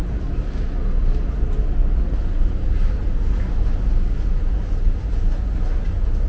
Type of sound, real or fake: real